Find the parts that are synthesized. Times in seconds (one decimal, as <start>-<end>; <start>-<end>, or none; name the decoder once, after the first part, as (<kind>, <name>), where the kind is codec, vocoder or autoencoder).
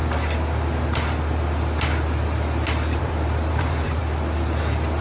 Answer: 3.0-4.0 (vocoder, BigVGAN v2)